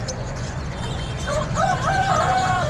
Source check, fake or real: fake